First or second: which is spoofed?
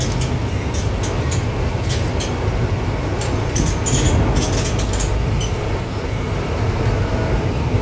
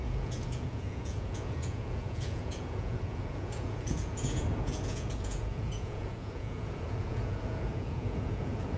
second